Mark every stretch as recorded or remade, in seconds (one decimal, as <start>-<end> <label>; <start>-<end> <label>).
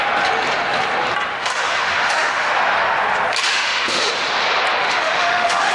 0.0-1.3 recorded; 1.3-2.5 remade; 2.5-3.5 recorded; 3.5-4.1 remade; 4.1-4.8 recorded; 4.8-5.7 remade